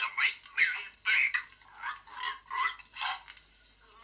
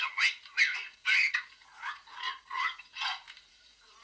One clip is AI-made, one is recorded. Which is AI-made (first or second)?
second